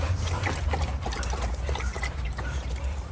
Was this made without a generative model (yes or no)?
no